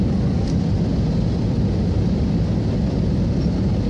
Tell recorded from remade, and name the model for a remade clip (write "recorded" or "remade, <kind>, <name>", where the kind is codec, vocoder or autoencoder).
recorded